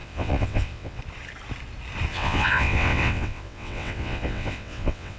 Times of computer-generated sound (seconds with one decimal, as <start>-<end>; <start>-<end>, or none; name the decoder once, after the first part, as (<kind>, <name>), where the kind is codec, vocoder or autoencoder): 0.0-1.0 (vocoder, WaveNeXt); 2.1-5.2